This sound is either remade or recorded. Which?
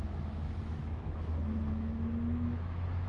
remade